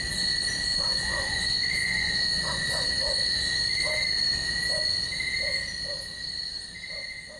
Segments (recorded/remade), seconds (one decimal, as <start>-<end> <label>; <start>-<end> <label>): 0.0-0.7 recorded; 0.7-3.4 remade; 3.4-7.4 recorded